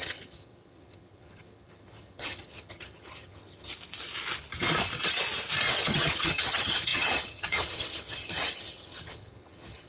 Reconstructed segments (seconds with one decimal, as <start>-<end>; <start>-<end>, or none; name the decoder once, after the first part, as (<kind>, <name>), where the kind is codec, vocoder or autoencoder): 0.0-3.7 (vocoder, HiFi-GAN); 5.8-9.9